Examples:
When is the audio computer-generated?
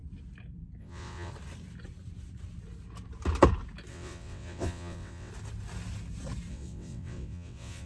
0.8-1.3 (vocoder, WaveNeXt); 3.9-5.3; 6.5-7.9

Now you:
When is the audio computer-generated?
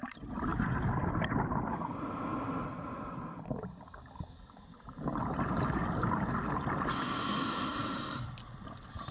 none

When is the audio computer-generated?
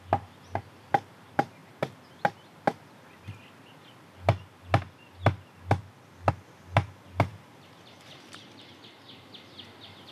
none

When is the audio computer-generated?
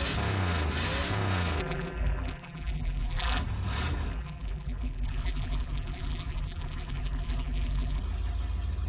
1.6-3.4 (vocoder, BigVGAN v2); 4.1-8.0